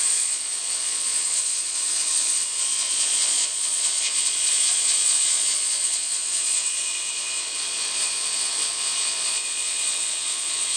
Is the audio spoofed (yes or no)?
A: yes